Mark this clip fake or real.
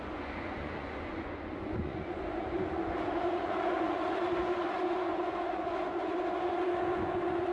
fake